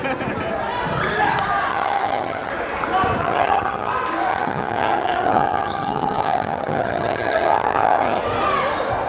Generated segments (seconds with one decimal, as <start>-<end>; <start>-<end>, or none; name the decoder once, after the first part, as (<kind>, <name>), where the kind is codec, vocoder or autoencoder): 1.7-2.5 (vocoder, HiFi-GAN); 3.2-3.9; 4.3-8.2